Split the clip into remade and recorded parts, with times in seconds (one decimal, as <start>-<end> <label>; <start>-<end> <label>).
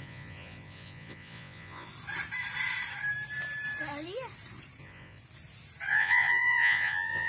0.0-1.9 remade; 1.9-4.8 recorded; 4.8-5.2 remade; 5.2-5.9 recorded; 5.9-7.3 remade